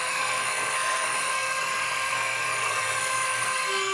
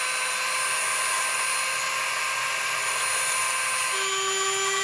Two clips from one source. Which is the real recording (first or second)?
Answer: second